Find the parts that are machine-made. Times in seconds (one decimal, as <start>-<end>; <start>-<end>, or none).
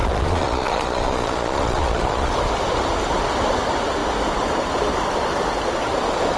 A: 0.0-2.3